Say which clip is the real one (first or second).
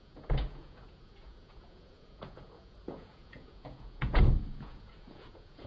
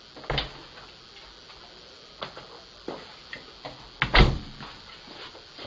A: second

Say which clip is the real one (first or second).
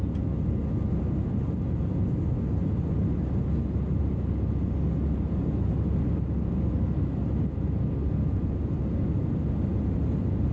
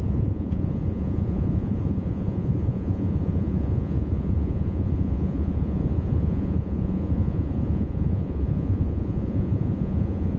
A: first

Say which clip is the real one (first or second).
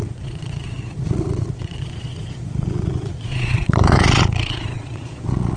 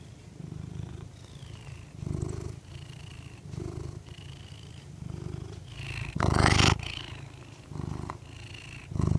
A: second